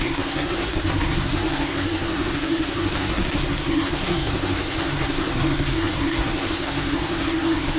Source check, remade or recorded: remade